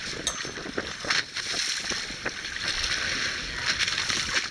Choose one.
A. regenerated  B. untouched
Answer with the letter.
B